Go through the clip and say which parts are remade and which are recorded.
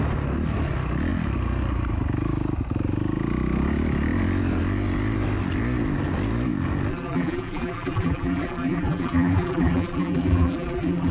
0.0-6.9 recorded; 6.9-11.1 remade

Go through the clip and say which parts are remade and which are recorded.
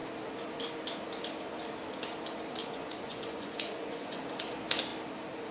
0.0-2.6 recorded; 2.6-4.2 remade; 4.2-5.5 recorded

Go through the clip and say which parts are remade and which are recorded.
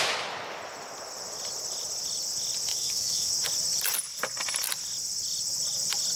0.0-2.7 recorded; 2.7-3.3 remade; 3.3-6.2 recorded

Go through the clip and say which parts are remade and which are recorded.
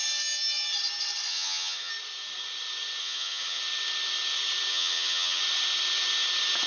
0.0-1.3 recorded; 1.3-1.9 remade; 1.9-3.0 recorded; 3.0-3.6 remade; 3.6-4.7 recorded; 4.7-5.4 remade; 5.4-6.7 recorded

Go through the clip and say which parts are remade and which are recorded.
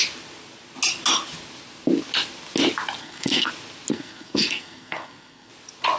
0.0-3.0 recorded; 3.0-3.5 remade; 3.5-3.9 recorded; 3.9-5.5 remade; 5.5-6.0 recorded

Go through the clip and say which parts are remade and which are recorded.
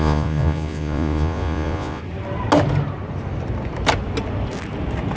0.0-2.0 remade; 2.0-5.2 recorded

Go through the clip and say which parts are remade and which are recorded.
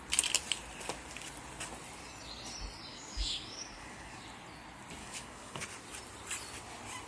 0.0-2.9 recorded; 2.9-4.2 remade; 4.2-5.0 recorded; 5.0-5.6 remade; 5.6-7.1 recorded